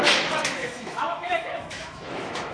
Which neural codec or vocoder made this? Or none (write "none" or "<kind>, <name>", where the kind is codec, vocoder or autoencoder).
autoencoder, DAC-VAE